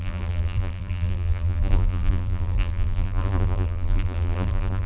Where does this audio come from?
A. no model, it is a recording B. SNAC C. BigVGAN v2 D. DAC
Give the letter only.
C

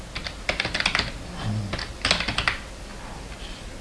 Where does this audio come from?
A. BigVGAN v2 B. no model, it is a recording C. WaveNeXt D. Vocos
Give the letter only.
B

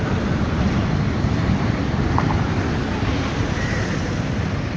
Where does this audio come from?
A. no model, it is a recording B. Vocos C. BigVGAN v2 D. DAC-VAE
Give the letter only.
C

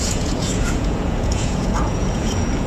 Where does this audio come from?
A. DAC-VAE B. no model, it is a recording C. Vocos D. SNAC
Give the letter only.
C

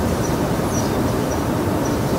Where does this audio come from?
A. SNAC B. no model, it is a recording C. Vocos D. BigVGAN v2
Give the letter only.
D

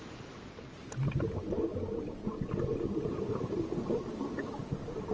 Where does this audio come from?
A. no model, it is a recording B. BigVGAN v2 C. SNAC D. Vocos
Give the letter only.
A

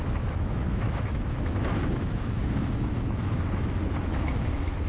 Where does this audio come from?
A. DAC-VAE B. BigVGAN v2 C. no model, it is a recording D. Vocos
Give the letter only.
A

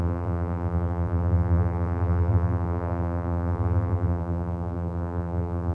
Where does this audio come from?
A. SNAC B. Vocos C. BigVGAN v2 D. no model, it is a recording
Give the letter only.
C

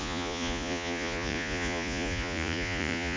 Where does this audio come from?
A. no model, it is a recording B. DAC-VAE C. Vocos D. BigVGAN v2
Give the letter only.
C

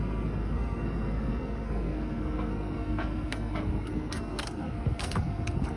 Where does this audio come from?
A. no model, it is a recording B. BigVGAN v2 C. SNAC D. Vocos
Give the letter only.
C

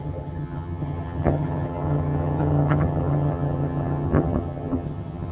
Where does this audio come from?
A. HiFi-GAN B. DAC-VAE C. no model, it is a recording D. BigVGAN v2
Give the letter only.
A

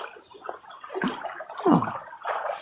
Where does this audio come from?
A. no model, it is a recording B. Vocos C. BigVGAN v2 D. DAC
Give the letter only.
C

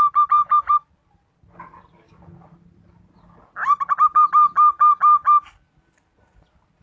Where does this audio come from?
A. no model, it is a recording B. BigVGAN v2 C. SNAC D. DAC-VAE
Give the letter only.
A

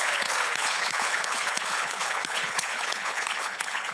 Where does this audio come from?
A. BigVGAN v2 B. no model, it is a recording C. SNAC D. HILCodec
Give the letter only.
D